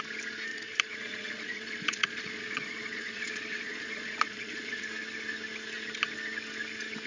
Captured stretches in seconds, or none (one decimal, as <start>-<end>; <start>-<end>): 0.0-0.5; 4.8-7.1